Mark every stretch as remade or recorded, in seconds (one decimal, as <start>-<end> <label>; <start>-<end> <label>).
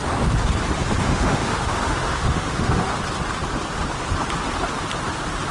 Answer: 0.0-1.0 recorded; 1.0-3.0 remade; 3.0-5.5 recorded